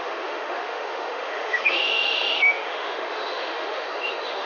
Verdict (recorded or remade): remade